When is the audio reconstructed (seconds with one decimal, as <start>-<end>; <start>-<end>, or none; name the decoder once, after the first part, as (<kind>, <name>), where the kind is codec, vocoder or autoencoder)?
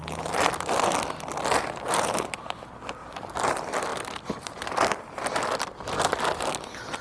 none